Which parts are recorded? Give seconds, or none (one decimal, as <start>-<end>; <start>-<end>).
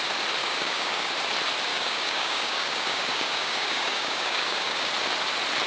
0.0-0.4; 1.1-1.7; 4.9-5.7